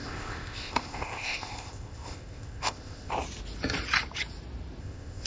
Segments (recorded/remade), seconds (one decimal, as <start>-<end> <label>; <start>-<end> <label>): 0.0-3.1 remade; 3.1-4.8 recorded; 4.8-5.3 remade